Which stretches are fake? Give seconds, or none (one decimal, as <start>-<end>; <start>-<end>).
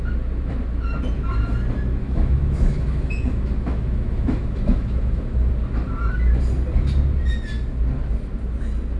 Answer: 2.0-5.5